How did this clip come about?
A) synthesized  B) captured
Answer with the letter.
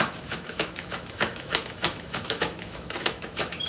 A